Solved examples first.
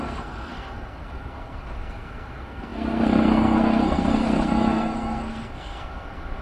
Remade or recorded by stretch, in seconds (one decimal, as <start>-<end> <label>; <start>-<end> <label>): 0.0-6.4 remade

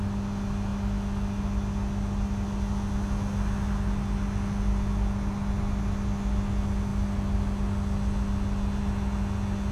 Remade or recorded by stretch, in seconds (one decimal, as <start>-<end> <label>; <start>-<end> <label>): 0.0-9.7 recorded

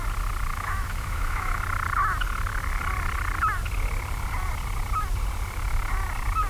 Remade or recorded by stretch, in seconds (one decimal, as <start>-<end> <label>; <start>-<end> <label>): 0.0-0.5 recorded; 0.5-1.6 remade; 1.6-6.5 recorded

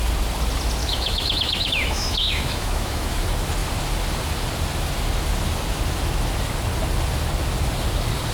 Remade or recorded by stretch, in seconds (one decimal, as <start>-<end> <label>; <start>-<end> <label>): 0.0-0.8 recorded; 0.8-3.1 remade; 3.1-8.3 recorded

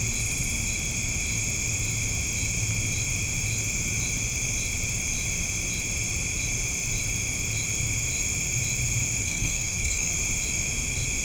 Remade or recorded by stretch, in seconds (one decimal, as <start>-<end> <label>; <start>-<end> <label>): 0.0-9.2 recorded; 9.2-10.1 remade; 10.1-11.2 recorded

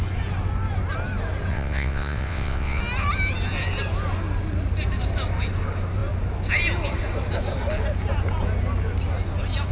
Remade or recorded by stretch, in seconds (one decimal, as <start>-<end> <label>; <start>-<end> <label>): 0.0-1.5 recorded; 1.5-2.8 remade; 2.8-9.7 recorded

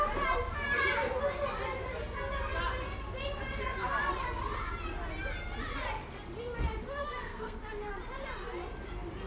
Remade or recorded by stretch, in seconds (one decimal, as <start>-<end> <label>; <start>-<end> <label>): 0.0-7.0 recorded; 7.0-7.6 remade; 7.6-9.3 recorded